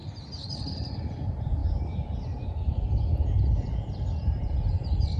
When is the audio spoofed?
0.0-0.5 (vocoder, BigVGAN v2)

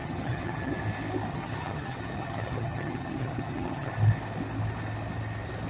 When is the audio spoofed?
0.0-0.8 (vocoder, HiFi-GAN); 1.3-3.9

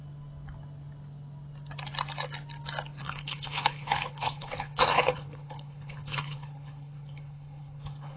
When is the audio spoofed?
3.0-8.2 (codec, HILCodec)

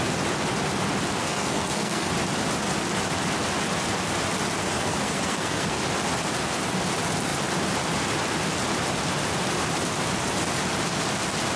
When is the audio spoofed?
1.2-2.1 (codec, SNAC); 4.6-5.8

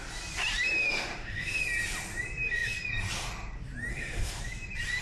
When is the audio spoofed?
0.8-1.6 (autoencoder, DAC-VAE); 3.9-4.4